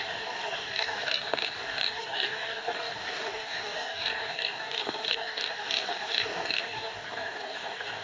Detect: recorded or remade remade